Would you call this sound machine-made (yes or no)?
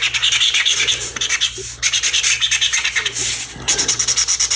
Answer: no